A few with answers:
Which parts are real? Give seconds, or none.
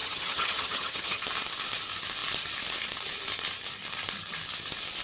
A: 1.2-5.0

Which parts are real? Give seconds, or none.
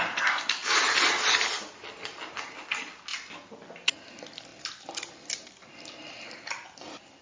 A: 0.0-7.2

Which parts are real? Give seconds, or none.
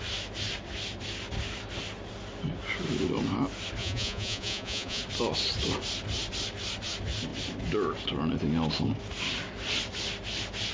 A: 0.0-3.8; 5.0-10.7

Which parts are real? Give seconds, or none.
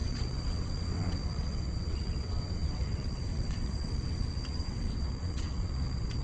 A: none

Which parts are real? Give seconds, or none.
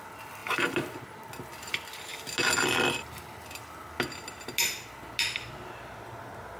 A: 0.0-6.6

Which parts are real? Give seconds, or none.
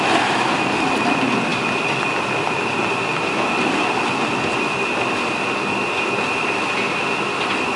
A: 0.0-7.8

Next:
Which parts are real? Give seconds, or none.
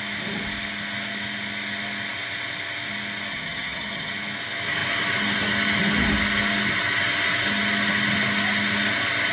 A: 0.0-3.3; 4.1-9.3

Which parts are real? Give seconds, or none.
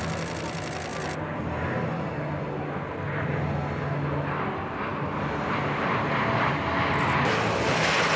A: 0.0-8.2